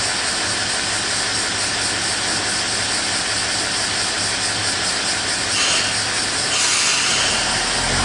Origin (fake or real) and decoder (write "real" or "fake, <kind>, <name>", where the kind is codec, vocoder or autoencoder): real